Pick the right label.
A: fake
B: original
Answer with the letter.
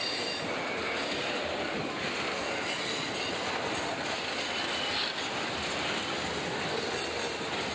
B